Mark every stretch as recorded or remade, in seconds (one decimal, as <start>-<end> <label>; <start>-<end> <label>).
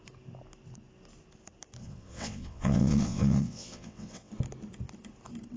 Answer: 0.0-1.8 recorded; 1.8-4.3 remade; 4.3-5.6 recorded